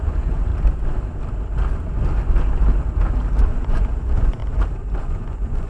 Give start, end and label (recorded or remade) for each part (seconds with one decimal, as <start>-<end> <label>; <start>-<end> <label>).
0.0-0.5 remade; 0.5-3.7 recorded; 3.7-4.4 remade; 4.4-5.0 recorded; 5.0-5.7 remade